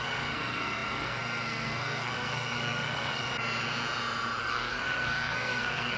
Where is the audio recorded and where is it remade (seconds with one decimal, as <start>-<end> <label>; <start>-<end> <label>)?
0.0-3.3 remade; 3.3-4.4 recorded; 4.4-6.0 remade